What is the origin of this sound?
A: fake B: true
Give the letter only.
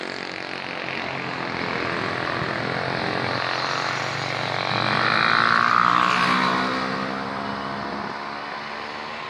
B